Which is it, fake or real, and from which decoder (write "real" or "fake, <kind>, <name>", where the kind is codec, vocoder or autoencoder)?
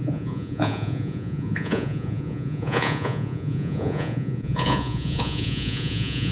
fake, vocoder, Vocos